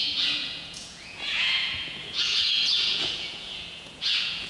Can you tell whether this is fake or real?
fake